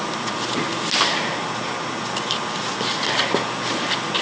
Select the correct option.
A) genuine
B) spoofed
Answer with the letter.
A